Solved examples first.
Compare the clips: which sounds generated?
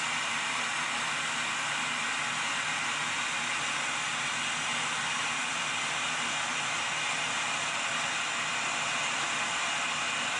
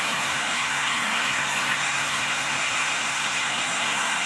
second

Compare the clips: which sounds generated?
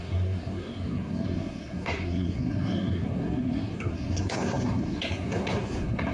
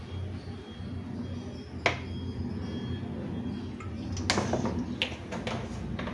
first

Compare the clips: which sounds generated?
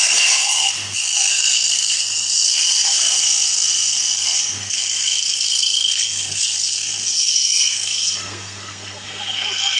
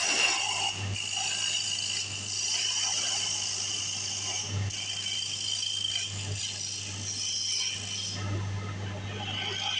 first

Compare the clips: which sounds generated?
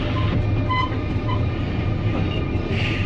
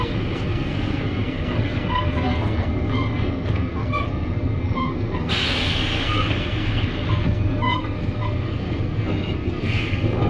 second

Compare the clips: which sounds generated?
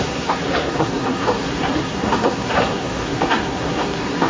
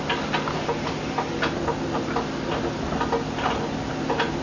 first